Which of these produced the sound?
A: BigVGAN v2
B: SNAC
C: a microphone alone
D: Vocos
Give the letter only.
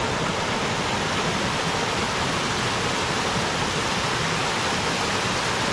C